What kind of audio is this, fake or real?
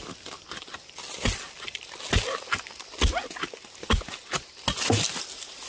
real